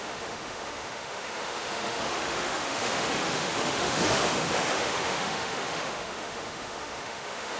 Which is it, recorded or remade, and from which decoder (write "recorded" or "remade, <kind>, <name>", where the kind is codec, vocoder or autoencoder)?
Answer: remade, autoencoder, DAC-VAE